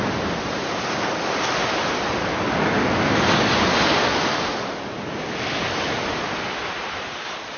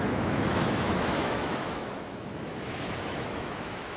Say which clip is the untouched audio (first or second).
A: first